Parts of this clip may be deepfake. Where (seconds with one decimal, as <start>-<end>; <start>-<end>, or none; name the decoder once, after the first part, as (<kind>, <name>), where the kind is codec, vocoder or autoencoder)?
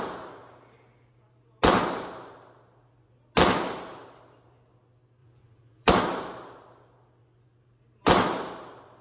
5.2-5.9 (vocoder, BigVGAN v2)